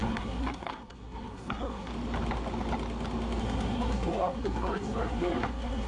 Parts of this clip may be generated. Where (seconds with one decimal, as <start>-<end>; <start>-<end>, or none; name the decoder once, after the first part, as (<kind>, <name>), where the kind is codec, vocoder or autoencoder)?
0.0-1.9 (codec, SNAC); 3.4-5.9

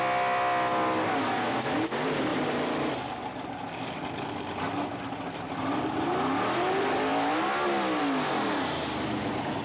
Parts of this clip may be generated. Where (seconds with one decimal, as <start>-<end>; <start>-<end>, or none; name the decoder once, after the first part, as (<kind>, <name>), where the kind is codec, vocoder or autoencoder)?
none

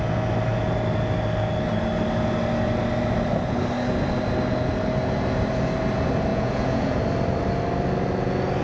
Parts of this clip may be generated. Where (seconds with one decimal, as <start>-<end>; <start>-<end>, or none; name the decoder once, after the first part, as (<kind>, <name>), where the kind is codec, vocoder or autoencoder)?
6.3-7.0 (vocoder, Vocos)

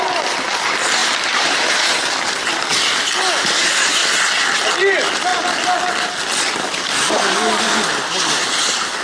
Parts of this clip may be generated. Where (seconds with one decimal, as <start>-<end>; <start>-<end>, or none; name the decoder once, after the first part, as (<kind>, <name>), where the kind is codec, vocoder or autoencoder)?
1.0-1.9 (vocoder, BigVGAN v2)

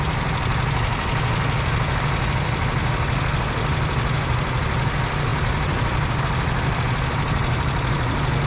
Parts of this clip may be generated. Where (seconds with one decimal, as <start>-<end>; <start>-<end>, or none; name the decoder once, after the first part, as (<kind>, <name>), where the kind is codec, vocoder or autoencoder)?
none

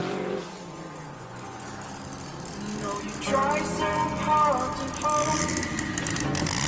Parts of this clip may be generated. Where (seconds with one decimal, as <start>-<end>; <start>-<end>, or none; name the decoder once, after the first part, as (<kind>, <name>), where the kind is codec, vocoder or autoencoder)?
0.0-1.7 (vocoder, Vocos)

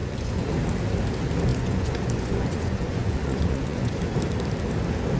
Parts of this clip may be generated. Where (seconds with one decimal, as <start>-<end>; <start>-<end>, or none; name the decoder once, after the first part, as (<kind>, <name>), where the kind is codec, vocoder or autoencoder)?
0.0-0.5 (vocoder, Vocos); 1.5-4.0